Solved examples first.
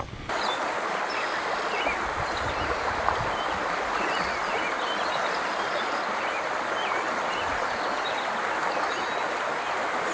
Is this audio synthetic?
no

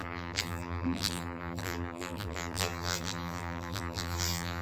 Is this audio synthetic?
yes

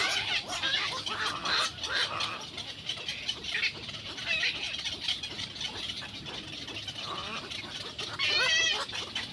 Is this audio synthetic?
no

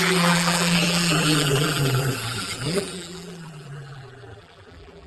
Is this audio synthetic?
yes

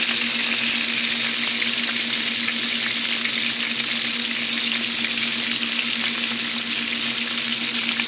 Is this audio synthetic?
no